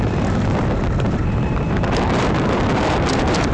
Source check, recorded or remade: remade